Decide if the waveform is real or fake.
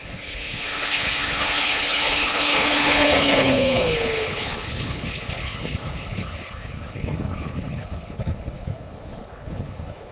fake